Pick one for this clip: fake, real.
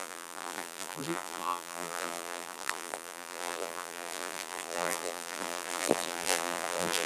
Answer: fake